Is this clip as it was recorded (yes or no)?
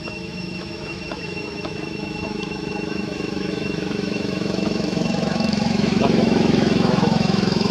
no